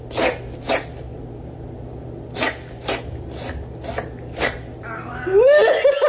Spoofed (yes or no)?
no